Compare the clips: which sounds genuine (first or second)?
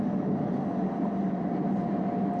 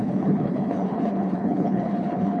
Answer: first